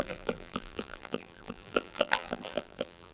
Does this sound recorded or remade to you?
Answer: remade